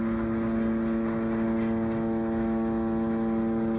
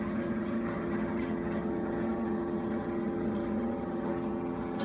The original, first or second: first